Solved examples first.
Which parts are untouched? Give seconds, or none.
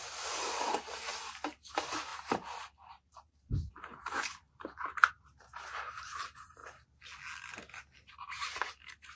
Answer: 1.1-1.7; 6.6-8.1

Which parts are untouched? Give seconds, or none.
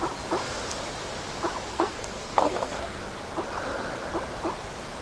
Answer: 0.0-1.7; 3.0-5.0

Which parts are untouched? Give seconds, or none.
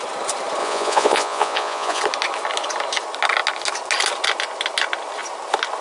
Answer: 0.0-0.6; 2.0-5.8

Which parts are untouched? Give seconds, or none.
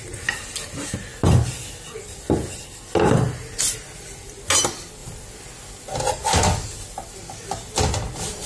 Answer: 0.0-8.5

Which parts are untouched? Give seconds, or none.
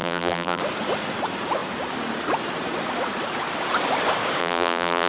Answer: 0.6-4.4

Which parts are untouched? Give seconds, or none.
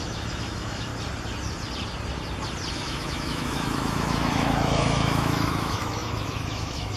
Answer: 0.9-2.7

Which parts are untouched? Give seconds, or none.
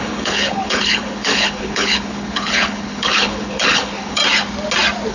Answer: 4.2-5.1